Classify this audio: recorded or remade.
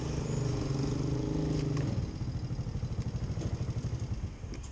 recorded